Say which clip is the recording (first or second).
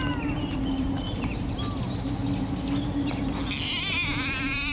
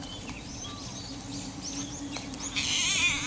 first